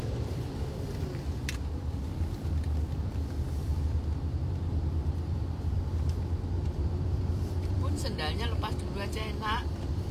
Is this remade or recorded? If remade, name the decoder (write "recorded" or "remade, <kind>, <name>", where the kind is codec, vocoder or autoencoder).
remade, vocoder, BigVGAN v2